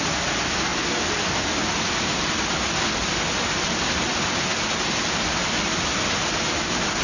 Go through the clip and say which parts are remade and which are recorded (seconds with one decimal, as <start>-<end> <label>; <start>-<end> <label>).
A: 0.0-7.0 recorded